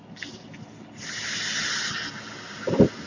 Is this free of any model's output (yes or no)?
yes